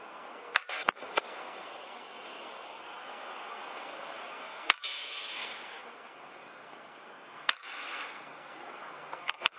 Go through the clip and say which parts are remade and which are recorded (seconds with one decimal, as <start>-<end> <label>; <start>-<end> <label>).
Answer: 0.0-9.6 remade